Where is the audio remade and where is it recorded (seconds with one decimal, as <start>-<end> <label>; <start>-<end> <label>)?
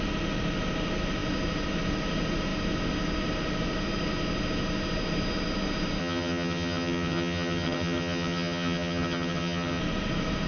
0.0-6.0 recorded; 6.0-9.8 remade; 9.8-10.5 recorded